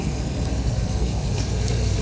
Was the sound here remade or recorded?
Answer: remade